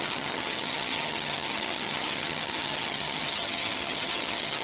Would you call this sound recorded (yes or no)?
no